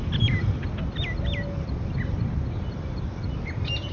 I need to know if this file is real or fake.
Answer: real